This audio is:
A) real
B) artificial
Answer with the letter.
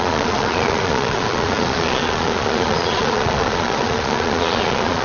B